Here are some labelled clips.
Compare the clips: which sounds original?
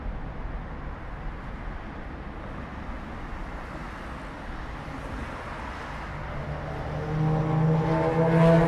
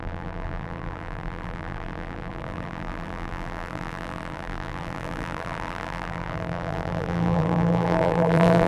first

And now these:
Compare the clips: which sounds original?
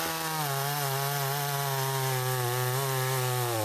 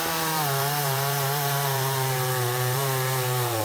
first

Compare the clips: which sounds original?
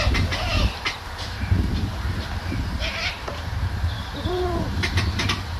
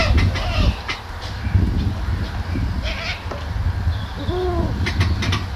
second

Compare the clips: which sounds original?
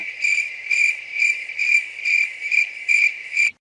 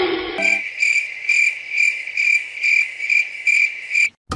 second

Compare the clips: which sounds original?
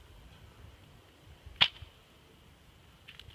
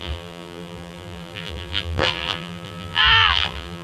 first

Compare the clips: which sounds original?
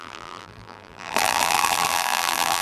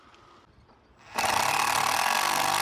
second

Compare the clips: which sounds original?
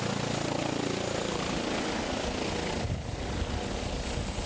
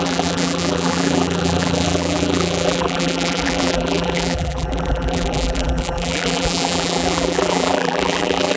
first